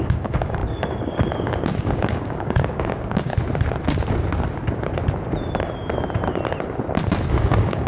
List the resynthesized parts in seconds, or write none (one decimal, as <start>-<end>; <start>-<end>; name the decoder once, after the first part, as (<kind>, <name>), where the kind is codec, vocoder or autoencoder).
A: 0.0-3.3 (codec, DAC); 7.3-7.9